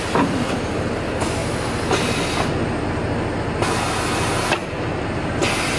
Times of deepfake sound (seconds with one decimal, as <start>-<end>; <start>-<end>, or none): 4.6-5.8